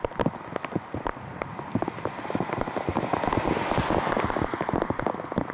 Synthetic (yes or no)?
no